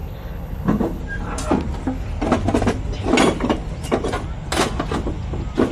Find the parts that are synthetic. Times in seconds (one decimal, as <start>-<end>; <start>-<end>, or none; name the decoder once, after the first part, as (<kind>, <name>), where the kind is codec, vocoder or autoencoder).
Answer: 0.0-1.0 (codec, HILCodec)